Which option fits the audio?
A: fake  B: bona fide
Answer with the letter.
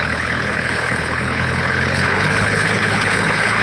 A